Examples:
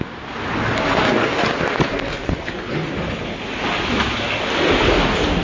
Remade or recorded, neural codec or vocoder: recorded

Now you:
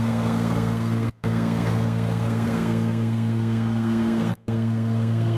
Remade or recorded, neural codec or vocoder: remade, codec, SNAC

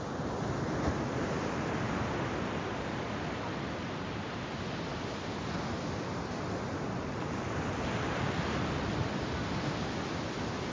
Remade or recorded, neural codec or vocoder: recorded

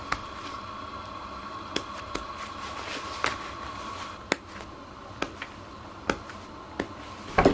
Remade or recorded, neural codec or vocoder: recorded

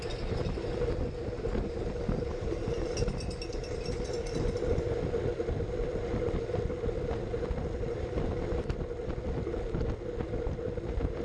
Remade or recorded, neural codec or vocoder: recorded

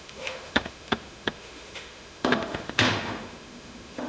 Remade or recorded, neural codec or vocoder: remade, autoencoder, DAC-VAE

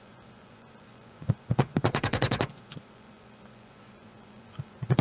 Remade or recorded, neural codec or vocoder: remade, vocoder, Vocos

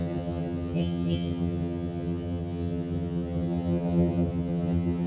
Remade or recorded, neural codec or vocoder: remade, vocoder, HiFi-GAN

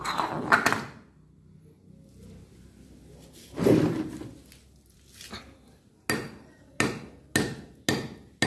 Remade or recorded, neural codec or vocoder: recorded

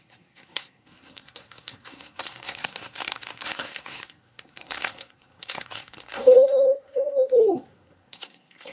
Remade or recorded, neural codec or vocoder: remade, codec, SNAC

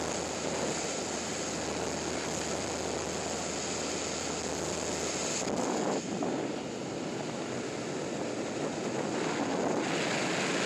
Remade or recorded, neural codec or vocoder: recorded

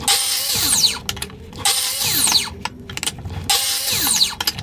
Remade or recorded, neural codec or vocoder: recorded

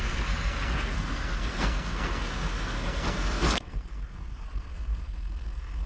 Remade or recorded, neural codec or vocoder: remade, codec, SNAC